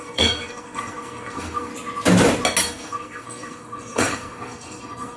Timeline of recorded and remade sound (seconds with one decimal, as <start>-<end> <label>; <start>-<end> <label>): 0.0-1.7 remade; 1.7-2.6 recorded; 2.6-5.2 remade

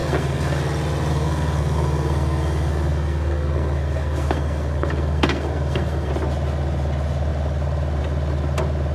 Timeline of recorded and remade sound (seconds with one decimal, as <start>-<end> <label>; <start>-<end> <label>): 0.0-0.6 remade; 0.6-1.1 recorded; 1.1-6.1 remade; 6.1-8.9 recorded

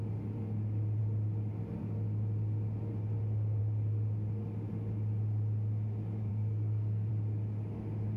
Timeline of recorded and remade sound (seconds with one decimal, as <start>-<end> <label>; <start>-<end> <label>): 0.0-6.3 recorded; 6.3-7.1 remade; 7.1-8.2 recorded

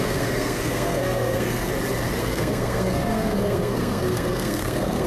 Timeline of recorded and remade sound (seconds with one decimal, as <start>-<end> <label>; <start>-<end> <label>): 0.0-1.7 remade; 1.7-2.2 recorded; 2.2-5.1 remade

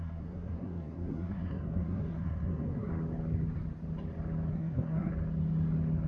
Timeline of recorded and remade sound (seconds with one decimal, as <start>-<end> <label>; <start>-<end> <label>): 0.0-2.9 remade; 2.9-4.5 recorded; 4.5-5.1 remade; 5.1-6.1 recorded

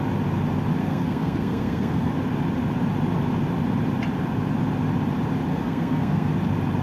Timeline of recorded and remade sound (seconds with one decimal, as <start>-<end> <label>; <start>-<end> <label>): 0.0-0.8 recorded; 0.8-2.1 remade; 2.1-5.5 recorded; 5.5-6.3 remade; 6.3-6.8 recorded

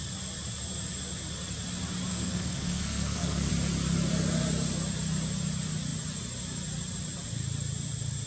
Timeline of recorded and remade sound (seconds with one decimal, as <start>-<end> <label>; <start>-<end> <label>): 0.0-2.1 recorded; 2.1-3.5 remade; 3.5-8.3 recorded

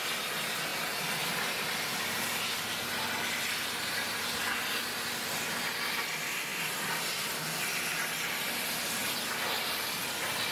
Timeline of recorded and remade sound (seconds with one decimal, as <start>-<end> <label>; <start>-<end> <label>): 0.0-10.5 recorded